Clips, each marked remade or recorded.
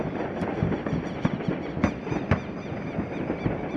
recorded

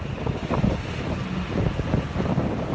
recorded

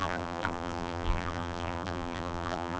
remade